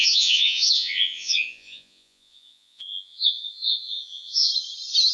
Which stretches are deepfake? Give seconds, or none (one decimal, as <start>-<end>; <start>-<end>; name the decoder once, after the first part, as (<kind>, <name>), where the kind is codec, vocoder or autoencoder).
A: 0.0-4.5 (vocoder, Vocos)

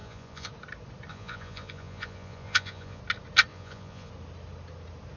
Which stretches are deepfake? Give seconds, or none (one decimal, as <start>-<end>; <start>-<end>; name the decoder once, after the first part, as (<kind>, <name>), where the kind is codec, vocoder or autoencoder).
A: 0.0-0.5 (vocoder, Vocos); 1.1-3.0; 3.5-4.1

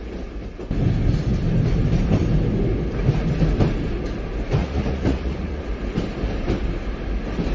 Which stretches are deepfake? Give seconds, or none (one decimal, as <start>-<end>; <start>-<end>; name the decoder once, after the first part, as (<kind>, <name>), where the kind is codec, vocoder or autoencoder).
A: 4.6-5.6 (vocoder, Vocos)

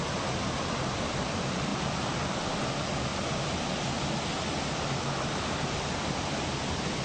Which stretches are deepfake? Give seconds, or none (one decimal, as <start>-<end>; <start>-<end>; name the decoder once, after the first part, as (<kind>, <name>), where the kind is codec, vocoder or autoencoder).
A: none

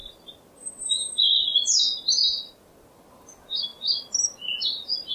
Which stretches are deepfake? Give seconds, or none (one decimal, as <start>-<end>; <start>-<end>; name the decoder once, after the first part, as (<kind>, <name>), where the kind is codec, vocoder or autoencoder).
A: none

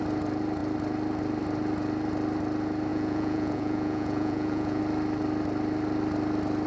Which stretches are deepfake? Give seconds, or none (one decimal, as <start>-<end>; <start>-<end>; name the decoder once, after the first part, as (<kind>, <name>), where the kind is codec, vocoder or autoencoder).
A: 2.9-4.8 (vocoder, Vocos)